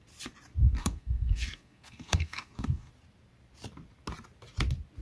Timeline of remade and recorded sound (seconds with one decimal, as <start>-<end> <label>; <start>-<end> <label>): 0.0-0.6 recorded; 0.6-2.9 remade; 2.9-5.0 recorded